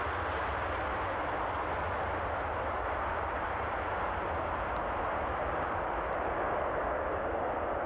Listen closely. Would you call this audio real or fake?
real